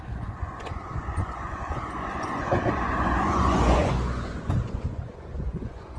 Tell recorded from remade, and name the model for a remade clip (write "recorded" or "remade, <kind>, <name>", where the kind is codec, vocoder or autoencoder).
remade, vocoder, Vocos